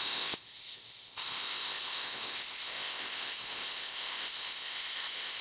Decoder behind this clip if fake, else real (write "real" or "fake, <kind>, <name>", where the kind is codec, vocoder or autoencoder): fake, codec, ZipCodec